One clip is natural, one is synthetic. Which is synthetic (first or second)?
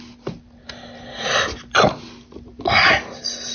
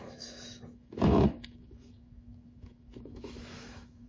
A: second